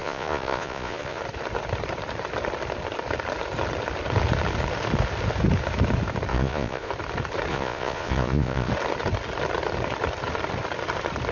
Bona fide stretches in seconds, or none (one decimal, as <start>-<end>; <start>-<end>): 1.2-6.3; 6.9-7.5; 8.7-11.3